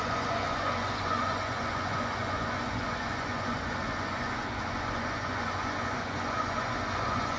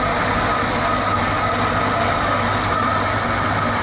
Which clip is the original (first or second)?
second